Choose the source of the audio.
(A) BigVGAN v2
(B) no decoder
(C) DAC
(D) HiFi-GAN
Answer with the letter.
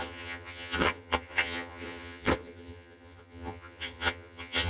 D